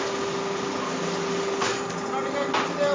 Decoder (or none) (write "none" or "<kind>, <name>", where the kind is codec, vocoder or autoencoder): none